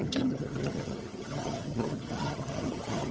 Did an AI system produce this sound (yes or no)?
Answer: yes